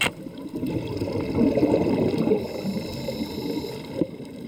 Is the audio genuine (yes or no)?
yes